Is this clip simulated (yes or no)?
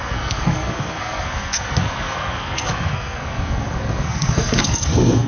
yes